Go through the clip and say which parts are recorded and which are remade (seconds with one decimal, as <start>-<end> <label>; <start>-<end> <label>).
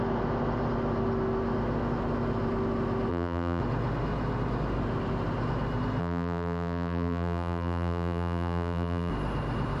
0.0-3.1 recorded; 3.1-3.6 remade; 3.6-6.0 recorded; 6.0-9.1 remade; 9.1-9.8 recorded